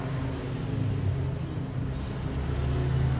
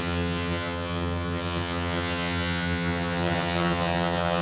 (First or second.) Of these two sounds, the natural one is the first